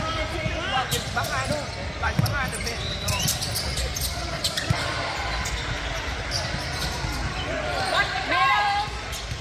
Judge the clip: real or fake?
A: fake